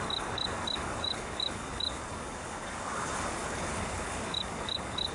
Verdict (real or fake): fake